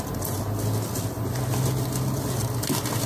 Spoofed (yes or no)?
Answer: no